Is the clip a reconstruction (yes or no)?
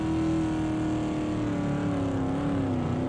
no